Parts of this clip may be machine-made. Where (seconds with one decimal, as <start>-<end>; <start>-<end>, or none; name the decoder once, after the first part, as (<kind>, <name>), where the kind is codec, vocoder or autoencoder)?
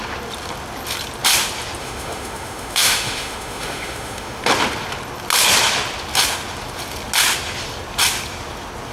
1.8-4.4 (autoencoder, DAC-VAE)